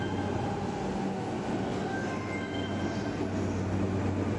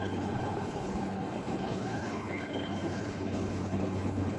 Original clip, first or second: first